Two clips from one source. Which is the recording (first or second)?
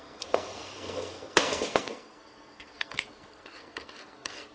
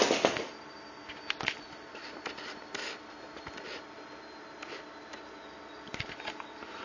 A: second